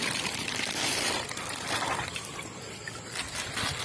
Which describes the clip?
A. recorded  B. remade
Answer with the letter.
B